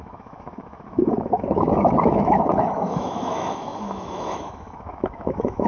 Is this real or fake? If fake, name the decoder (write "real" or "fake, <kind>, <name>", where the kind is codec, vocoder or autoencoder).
fake, autoencoder, DAC-VAE